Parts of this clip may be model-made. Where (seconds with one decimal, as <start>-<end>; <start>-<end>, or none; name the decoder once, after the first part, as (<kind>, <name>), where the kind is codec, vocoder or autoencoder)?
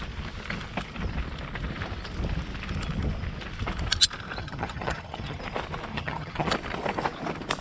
4.4-5.4 (vocoder, HiFi-GAN); 5.9-6.5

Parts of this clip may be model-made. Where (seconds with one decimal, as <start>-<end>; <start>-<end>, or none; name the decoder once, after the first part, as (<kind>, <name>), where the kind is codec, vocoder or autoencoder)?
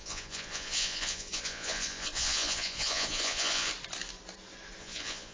0.0-3.7 (vocoder, Vocos); 4.8-5.3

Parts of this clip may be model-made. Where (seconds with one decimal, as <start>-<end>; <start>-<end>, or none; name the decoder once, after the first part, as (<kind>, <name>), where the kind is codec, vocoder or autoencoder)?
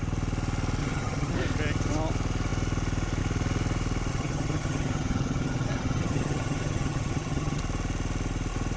0.8-1.3 (vocoder, HiFi-GAN); 4.1-7.6